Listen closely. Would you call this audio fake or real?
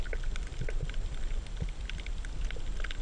real